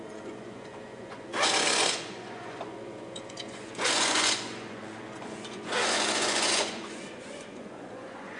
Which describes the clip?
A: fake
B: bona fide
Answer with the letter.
A